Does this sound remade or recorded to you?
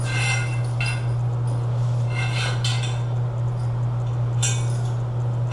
recorded